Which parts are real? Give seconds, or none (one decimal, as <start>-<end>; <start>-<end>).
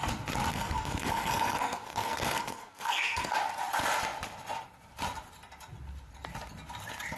0.0-0.5; 3.3-7.2